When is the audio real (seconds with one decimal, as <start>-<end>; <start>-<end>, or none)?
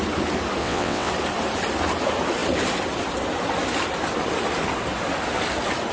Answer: 0.0-0.6; 1.1-5.9